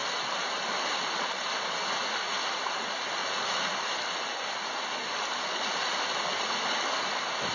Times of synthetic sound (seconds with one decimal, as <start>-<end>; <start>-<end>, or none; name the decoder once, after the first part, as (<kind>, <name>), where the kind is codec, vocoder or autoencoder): none